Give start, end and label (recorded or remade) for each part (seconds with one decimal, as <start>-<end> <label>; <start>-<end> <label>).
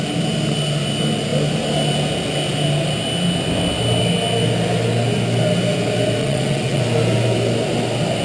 0.0-6.2 recorded; 6.2-6.8 remade; 6.8-8.2 recorded